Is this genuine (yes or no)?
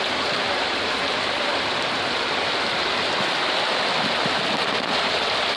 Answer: yes